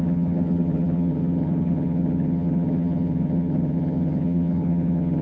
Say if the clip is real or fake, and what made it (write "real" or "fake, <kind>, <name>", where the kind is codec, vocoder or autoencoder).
fake, vocoder, HiFi-GAN